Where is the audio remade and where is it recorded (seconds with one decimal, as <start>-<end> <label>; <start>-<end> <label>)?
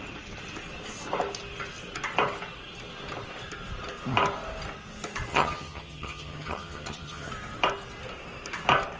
0.0-5.3 recorded; 5.3-7.3 remade; 7.3-9.0 recorded